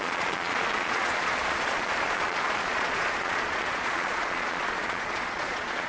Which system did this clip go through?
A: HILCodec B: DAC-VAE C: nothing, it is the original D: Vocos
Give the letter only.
D